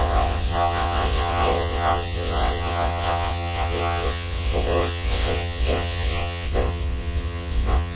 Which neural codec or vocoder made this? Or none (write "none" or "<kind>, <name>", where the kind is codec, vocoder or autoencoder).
vocoder, WaveNeXt